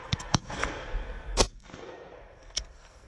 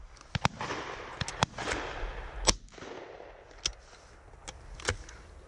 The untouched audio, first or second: second